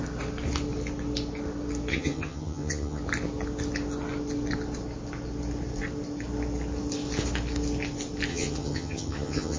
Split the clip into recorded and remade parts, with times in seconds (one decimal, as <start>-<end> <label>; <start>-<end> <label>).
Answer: 0.0-1.9 recorded; 1.9-3.0 remade; 3.0-8.3 recorded; 8.3-9.6 remade